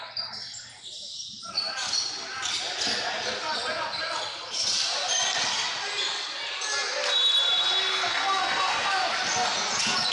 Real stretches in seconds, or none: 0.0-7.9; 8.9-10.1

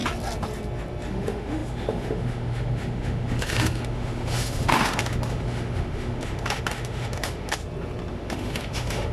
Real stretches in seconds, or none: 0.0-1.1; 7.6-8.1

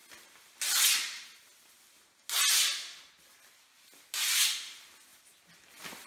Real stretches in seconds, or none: 0.0-6.1

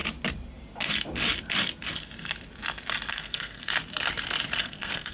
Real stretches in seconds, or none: 0.0-3.1; 3.7-4.6

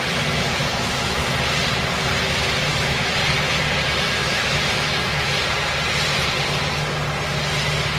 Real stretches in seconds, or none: 0.0-0.6; 1.3-2.7; 3.2-4.2; 5.3-8.0

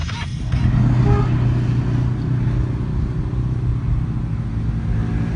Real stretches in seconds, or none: 0.0-5.4

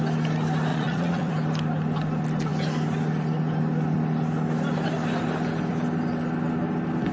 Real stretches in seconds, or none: 0.0-0.7; 1.3-7.1